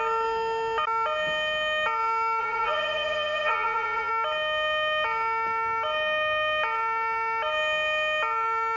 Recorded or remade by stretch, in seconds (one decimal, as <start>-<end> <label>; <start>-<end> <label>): 0.0-2.4 recorded; 2.4-4.1 remade; 4.1-8.8 recorded